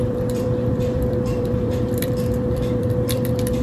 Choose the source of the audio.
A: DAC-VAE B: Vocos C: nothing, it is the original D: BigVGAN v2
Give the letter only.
D